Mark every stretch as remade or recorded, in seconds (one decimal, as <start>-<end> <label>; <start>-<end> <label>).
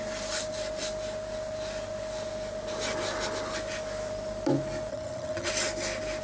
0.0-4.9 recorded; 4.9-5.5 remade; 5.5-6.2 recorded